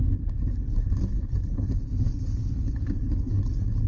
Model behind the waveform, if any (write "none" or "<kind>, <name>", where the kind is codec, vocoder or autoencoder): codec, HILCodec